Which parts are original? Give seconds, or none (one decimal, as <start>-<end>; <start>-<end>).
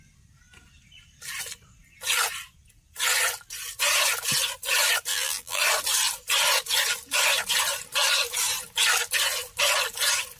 0.0-5.1; 5.6-10.4